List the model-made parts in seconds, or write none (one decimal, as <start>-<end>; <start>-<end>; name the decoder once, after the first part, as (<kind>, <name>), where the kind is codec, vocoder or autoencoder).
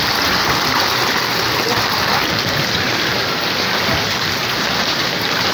4.4-5.5 (vocoder, BigVGAN v2)